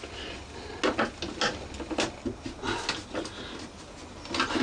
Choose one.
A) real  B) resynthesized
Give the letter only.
A